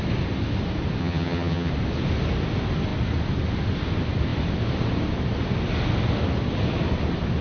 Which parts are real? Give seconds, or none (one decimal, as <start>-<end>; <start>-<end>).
0.0-1.0; 1.7-7.4